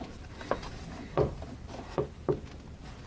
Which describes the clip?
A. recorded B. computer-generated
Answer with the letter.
A